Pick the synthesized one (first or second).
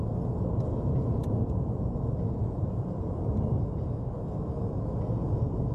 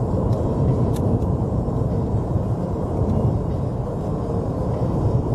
second